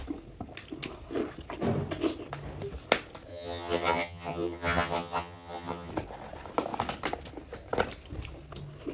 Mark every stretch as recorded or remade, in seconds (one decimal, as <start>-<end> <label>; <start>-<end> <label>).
0.0-3.3 recorded; 3.3-5.9 remade; 5.9-8.9 recorded